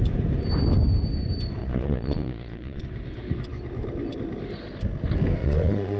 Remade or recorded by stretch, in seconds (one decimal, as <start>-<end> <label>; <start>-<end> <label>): 0.0-1.6 recorded; 1.6-2.8 remade; 2.8-5.4 recorded; 5.4-6.0 remade